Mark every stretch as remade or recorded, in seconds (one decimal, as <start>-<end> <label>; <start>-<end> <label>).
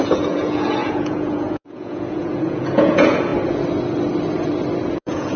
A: 0.0-3.3 remade; 3.3-4.9 recorded; 4.9-5.4 remade